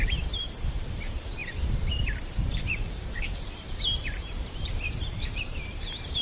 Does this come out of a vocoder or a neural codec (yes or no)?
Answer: yes